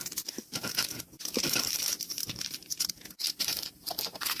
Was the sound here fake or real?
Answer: fake